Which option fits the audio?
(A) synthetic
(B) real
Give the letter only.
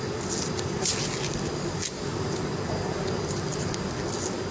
B